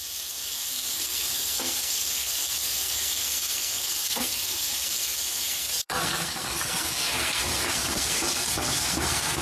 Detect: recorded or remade remade